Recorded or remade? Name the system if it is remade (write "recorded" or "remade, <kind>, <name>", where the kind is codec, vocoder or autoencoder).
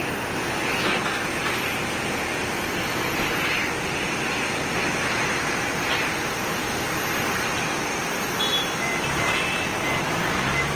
recorded